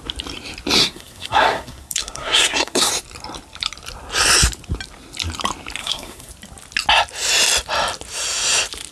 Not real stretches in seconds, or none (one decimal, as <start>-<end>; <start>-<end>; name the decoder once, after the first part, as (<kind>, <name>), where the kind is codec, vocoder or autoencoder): 0.8-2.9 (codec, SNAC); 5.8-6.3